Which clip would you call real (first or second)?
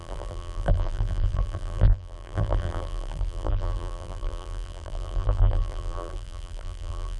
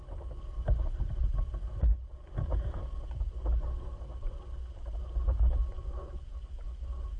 second